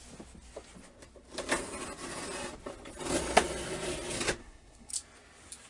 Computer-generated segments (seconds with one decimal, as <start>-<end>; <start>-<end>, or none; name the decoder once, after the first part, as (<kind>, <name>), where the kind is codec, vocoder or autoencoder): 4.4-4.9 (codec, SNAC)